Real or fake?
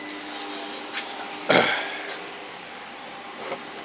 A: real